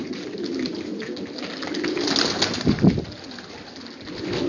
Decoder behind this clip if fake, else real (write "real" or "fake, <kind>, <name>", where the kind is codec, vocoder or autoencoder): real